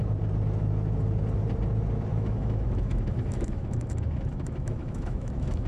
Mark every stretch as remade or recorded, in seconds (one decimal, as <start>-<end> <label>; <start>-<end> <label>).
0.0-2.1 recorded; 2.1-5.7 remade

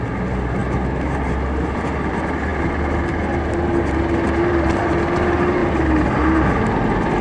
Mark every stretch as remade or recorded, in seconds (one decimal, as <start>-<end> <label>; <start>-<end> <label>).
0.0-7.2 recorded

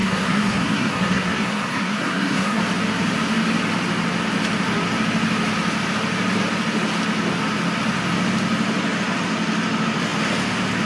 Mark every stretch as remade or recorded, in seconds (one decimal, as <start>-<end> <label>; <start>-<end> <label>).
0.0-2.6 remade; 2.6-10.9 recorded

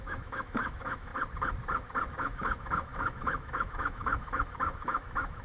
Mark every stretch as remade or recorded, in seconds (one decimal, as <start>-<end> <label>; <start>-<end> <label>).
0.0-1.1 remade; 1.1-2.1 recorded; 2.1-5.4 remade

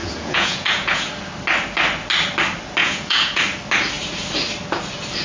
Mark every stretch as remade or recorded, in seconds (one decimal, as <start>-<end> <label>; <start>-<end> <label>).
0.0-1.1 remade; 1.1-2.8 recorded; 2.8-3.4 remade; 3.4-5.2 recorded

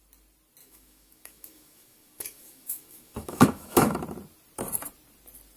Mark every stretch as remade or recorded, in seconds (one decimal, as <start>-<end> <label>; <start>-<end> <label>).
0.0-0.6 recorded; 0.6-4.0 remade; 4.0-5.6 recorded